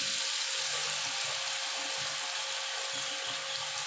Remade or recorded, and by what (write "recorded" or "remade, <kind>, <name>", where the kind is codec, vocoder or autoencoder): recorded